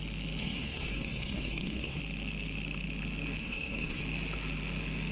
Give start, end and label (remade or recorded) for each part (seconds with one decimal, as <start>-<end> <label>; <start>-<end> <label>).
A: 0.0-0.4 recorded; 0.4-2.0 remade; 2.0-3.4 recorded; 3.4-4.0 remade; 4.0-5.1 recorded